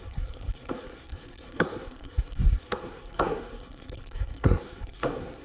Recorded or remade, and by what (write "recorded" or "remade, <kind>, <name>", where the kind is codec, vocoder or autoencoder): remade, codec, SNAC